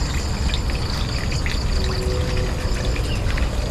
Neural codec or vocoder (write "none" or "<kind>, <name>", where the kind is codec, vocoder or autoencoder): none